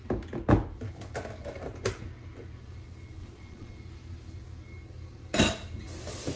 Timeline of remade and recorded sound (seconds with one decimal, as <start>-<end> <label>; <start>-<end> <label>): 0.0-3.2 recorded; 3.2-3.7 remade; 3.7-6.4 recorded